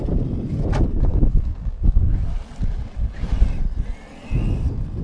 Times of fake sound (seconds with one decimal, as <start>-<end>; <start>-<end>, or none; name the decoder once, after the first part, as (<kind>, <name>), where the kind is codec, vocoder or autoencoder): 1.1-2.2 (codec, DAC)